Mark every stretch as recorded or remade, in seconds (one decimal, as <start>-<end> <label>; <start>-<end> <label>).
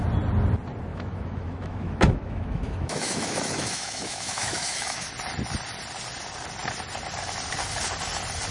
0.0-0.9 recorded; 0.9-5.1 remade; 5.1-8.5 recorded